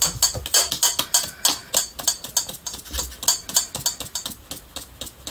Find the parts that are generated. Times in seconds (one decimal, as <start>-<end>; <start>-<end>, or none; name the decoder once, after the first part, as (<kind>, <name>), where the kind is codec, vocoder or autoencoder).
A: none